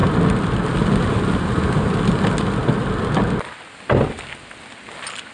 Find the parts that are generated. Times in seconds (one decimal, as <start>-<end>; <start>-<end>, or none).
none